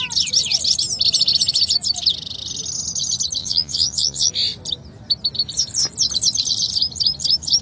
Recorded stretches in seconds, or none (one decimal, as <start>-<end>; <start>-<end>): 0.0-3.4; 4.3-7.6

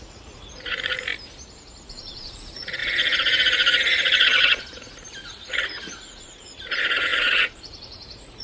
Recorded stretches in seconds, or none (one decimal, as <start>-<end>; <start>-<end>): 1.1-1.9